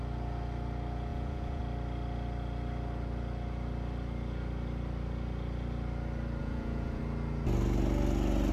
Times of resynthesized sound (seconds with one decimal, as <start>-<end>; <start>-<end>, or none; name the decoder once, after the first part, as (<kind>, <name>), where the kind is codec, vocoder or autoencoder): 1.1-1.6 (vocoder, Vocos); 6.4-7.0